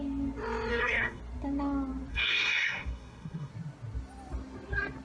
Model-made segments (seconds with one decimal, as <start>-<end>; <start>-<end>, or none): 0.7-1.2; 2.1-3.5